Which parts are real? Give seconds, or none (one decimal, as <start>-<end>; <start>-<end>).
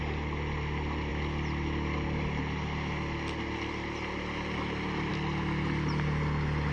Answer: 0.0-6.7